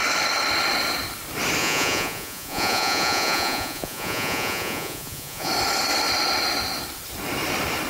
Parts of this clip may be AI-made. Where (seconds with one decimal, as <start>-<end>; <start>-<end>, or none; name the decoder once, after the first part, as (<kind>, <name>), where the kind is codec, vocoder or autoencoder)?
1.6-5.5 (vocoder, Vocos)